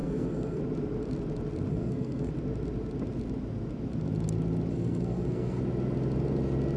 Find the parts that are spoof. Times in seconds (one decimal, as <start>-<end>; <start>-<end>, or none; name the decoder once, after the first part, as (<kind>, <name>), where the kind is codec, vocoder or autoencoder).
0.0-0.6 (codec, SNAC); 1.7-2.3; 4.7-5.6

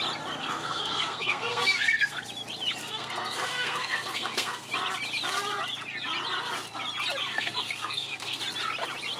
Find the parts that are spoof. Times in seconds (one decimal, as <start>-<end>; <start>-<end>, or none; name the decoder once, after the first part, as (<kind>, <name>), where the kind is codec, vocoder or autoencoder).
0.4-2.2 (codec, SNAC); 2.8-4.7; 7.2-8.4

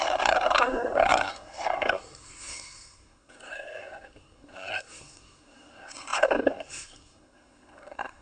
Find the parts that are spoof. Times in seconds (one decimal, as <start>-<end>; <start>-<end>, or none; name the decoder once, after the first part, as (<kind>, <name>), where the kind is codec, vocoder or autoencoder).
0.0-8.2 (codec, SNAC)

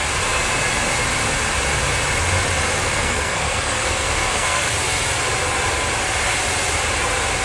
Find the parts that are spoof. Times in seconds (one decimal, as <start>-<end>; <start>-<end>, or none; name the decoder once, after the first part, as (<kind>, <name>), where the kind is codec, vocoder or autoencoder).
2.8-4.7 (codec, SNAC)

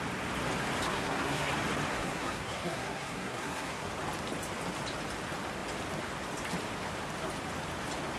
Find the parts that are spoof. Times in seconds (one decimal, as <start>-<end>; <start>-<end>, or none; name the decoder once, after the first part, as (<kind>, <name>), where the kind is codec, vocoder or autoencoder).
0.9-1.5 (codec, SNAC); 1.9-3.9

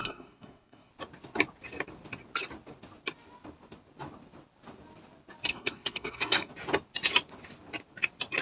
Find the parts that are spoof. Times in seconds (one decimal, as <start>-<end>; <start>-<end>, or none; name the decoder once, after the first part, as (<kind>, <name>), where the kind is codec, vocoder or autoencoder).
0.0-0.9 (codec, SNAC); 5.5-6.5